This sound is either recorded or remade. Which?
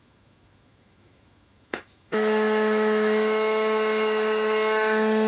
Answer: remade